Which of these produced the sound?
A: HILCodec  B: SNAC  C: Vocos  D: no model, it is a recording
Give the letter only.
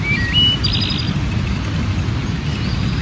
D